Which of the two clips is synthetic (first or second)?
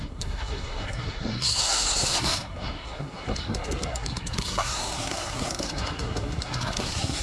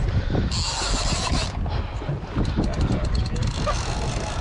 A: first